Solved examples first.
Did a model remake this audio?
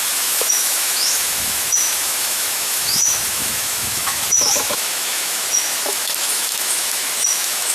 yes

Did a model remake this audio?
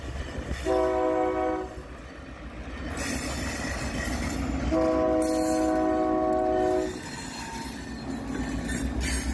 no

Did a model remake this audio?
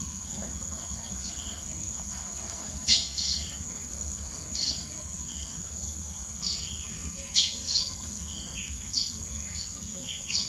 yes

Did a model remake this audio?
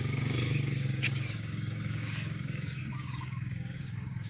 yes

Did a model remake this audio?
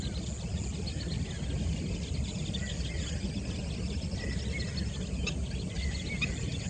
no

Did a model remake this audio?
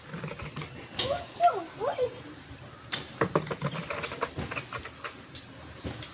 no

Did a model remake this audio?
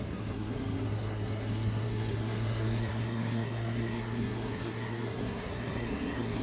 yes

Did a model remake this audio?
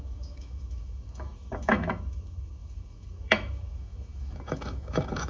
yes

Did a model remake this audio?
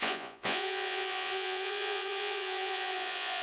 yes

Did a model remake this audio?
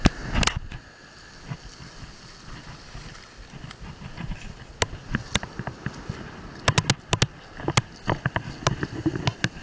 no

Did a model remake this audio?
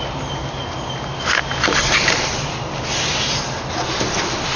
no